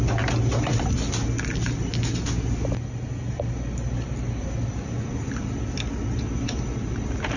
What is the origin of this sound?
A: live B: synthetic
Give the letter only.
A